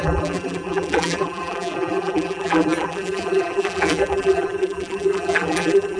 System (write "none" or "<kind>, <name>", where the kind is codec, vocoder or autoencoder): vocoder, BigVGAN v2